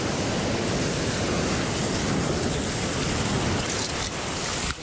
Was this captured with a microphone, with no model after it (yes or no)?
yes